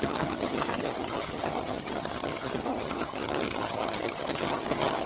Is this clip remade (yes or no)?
yes